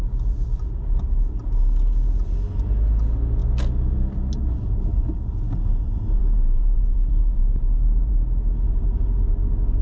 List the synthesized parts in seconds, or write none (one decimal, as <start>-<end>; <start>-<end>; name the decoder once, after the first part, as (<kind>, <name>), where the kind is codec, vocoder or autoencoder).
6.2-8.1 (vocoder, Vocos)